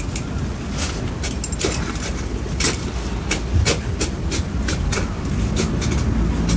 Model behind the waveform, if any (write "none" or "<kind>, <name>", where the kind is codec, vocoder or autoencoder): none